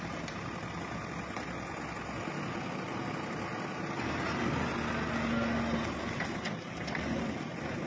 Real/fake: real